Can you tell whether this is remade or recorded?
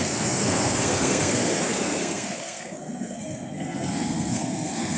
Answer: remade